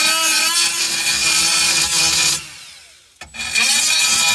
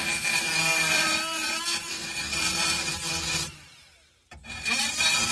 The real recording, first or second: first